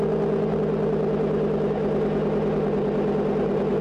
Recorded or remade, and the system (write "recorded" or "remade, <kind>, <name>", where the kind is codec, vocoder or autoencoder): recorded